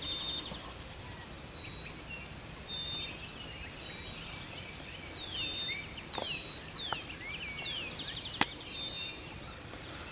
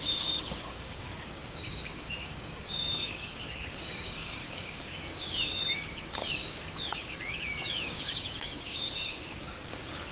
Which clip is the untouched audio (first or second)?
first